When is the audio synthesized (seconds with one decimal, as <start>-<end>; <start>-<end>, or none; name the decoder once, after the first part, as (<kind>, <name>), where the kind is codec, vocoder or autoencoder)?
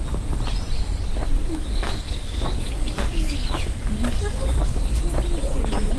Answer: 1.4-5.0 (codec, DAC)